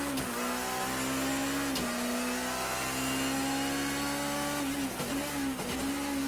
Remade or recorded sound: recorded